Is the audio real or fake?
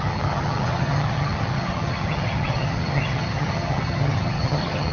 fake